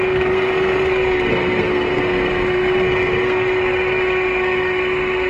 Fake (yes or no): yes